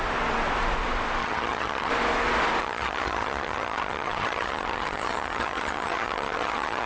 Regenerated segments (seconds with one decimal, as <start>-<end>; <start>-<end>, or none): 1.2-1.9; 2.6-6.9

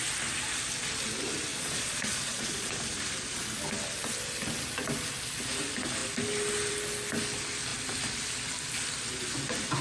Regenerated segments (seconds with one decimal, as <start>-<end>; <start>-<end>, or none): 1.5-2.7

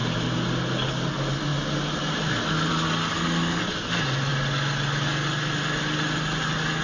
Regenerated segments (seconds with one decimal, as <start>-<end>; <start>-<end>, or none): 3.1-3.6

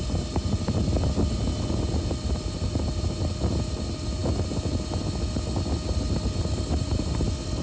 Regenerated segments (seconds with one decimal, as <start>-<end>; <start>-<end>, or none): none